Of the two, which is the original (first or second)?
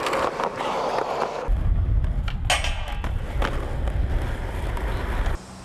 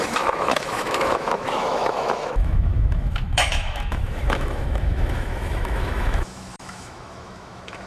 first